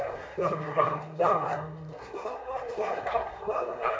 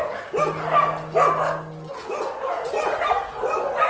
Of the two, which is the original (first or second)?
second